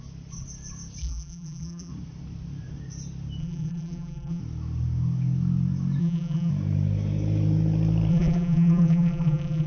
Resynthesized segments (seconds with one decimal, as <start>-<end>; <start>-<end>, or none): 1.0-1.9; 3.4-4.4; 6.0-6.5; 8.1-9.7

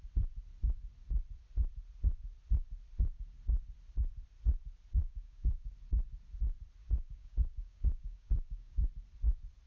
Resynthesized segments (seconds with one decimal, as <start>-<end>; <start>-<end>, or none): 5.0-5.7; 6.8-8.9

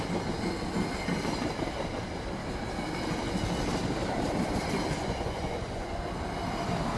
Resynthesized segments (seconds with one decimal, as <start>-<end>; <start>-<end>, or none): 5.0-6.0

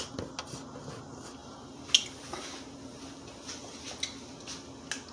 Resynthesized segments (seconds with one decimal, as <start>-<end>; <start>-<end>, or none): none